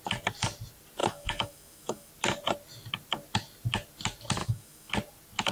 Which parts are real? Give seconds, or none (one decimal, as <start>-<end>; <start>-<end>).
0.0-1.0; 2.1-4.4; 4.9-5.5